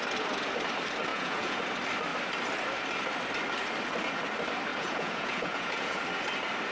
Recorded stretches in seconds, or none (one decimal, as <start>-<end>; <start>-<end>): 0.0-1.1; 1.6-4.7; 6.0-6.7